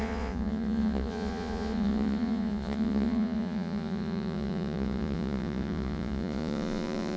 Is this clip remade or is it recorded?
remade